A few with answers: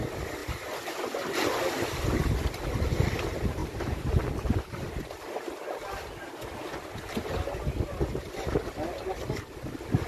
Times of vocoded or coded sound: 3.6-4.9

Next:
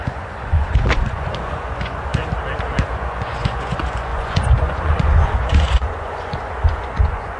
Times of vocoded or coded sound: 0.0-2.1; 2.8-7.4

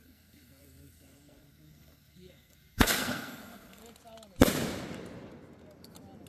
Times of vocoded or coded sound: 0.0-3.8

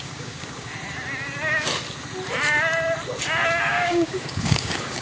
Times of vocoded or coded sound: 0.0-0.7; 3.7-5.0

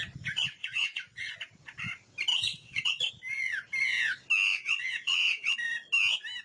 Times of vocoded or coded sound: 0.6-1.3; 2.3-3.1; 4.6-5.5

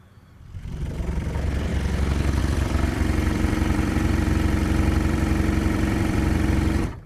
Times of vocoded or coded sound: 0.0-1.7; 2.4-7.1

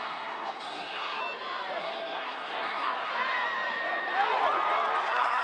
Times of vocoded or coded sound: 0.0-1.2; 1.8-3.1; 5.0-5.4

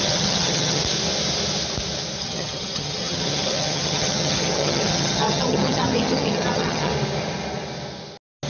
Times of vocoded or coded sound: 0.0-0.8; 2.2-6.9